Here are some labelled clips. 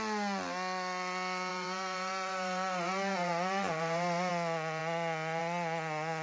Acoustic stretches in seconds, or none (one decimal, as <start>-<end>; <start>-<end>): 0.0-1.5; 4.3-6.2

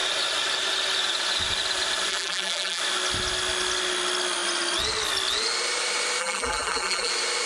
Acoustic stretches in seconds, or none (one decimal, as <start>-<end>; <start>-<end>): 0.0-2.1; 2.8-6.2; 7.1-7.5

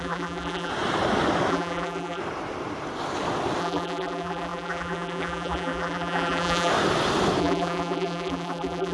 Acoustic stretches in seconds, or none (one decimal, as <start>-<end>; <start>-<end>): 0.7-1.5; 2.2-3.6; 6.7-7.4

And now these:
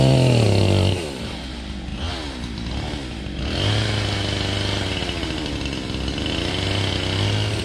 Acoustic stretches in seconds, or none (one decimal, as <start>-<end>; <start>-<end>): 0.0-7.6

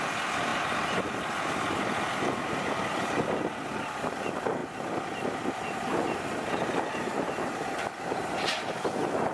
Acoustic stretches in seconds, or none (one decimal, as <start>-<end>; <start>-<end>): 0.0-0.5; 1.0-9.3

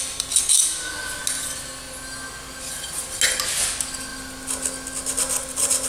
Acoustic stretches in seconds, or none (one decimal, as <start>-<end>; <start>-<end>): 0.0-5.9

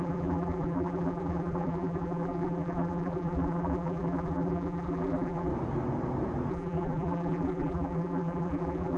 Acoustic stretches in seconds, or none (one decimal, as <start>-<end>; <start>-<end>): 5.5-6.5

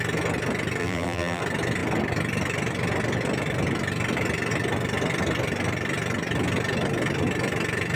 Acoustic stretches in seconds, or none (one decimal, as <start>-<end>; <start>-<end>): 0.0-0.8; 1.4-8.0